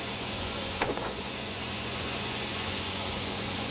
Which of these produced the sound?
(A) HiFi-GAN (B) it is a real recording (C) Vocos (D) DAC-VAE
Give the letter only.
C